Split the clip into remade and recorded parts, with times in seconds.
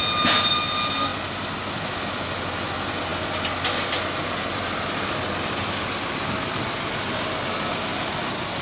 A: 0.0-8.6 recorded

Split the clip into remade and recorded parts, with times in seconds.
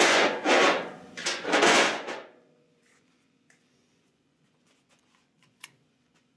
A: 0.0-6.4 remade